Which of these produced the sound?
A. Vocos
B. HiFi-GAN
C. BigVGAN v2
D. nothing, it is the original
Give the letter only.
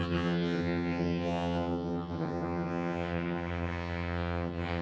B